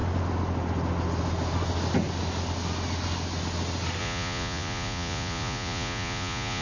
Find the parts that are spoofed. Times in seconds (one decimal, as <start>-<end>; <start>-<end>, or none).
4.0-6.6